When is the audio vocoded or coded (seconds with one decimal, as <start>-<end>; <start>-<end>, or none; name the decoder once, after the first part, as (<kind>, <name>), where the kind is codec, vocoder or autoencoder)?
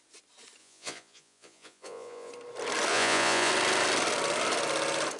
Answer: 0.6-2.3 (vocoder, Vocos); 2.9-3.5